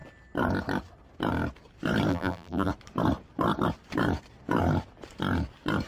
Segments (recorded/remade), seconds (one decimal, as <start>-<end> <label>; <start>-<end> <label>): 0.0-2.1 recorded; 2.1-2.7 remade; 2.7-5.9 recorded